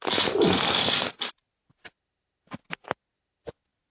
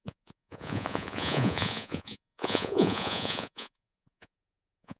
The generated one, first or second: second